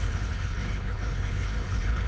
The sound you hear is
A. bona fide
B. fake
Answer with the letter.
B